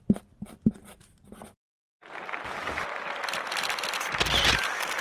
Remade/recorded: remade